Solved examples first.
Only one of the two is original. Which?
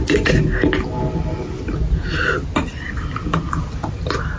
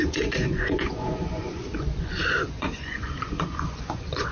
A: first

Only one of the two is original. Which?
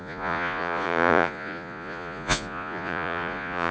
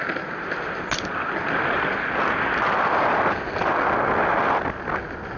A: second